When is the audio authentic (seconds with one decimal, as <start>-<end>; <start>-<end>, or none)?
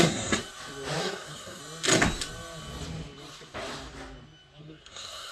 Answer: 0.4-1.0; 1.6-4.6